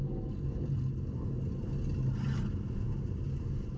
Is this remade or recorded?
recorded